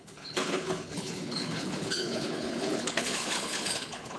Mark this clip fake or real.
fake